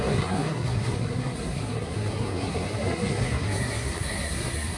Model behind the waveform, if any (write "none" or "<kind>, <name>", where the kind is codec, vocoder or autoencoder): codec, SNAC